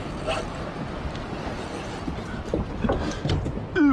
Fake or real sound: real